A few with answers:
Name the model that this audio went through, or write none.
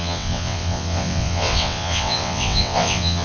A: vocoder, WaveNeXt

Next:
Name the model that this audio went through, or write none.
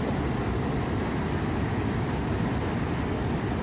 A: none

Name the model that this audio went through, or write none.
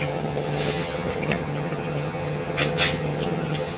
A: vocoder, HiFi-GAN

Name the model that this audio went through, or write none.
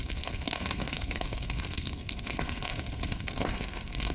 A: codec, SNAC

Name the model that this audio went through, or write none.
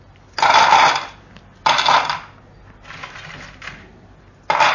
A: none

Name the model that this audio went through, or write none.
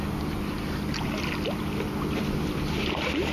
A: none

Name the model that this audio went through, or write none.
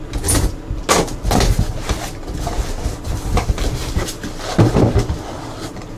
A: none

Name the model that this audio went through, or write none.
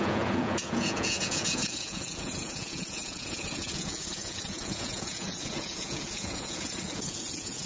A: vocoder, Vocos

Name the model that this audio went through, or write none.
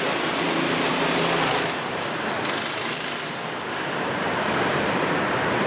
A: vocoder, BigVGAN v2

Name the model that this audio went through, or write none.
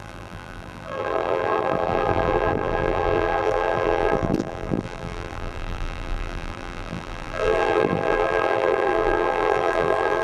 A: vocoder, BigVGAN v2